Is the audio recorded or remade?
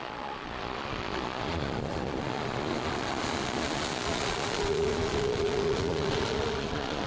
remade